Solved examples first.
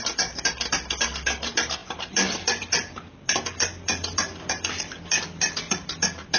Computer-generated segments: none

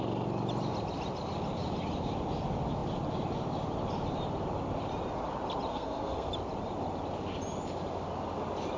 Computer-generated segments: 5.7-6.3 (codec, SNAC)

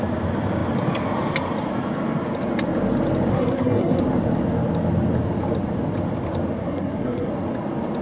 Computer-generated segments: 3.3-4.0 (codec, SNAC); 6.6-7.3

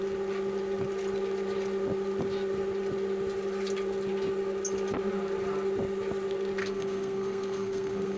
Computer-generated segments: 6.6-8.2 (codec, SNAC)

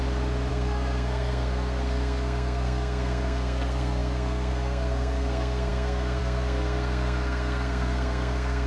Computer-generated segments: 0.5-8.7 (codec, SNAC)

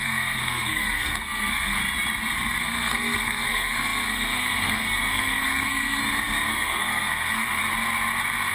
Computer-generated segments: 0.0-1.8 (codec, SNAC); 2.6-6.0; 6.5-7.6

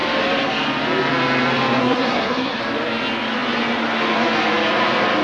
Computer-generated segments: 1.8-2.6 (codec, SNAC)

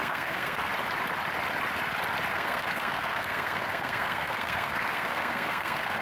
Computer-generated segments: 0.0-0.7 (codec, SNAC); 2.3-6.0